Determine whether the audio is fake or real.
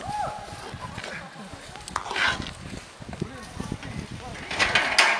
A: real